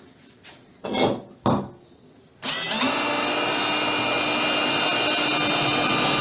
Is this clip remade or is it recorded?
recorded